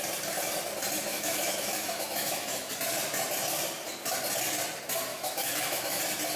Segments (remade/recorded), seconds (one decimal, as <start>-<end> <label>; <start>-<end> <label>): 0.0-1.1 recorded; 1.1-2.7 remade; 2.7-5.1 recorded; 5.1-6.0 remade; 6.0-6.4 recorded